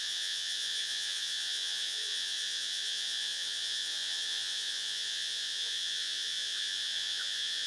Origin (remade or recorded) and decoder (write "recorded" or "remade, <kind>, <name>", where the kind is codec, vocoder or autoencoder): remade, vocoder, Vocos